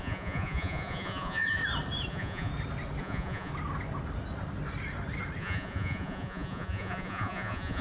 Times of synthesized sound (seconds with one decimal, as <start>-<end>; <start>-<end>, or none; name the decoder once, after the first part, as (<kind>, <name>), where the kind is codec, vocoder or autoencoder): 0.0-1.6 (vocoder, Vocos); 2.1-2.5; 3.0-3.5; 5.4-7.8